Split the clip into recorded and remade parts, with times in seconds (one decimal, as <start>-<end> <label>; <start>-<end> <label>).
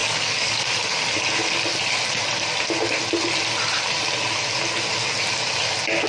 0.0-0.7 remade; 0.7-6.1 recorded